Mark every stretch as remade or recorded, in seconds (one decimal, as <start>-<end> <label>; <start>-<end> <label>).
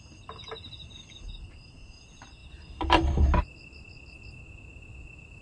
0.0-5.4 recorded